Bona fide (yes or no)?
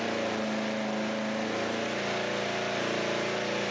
yes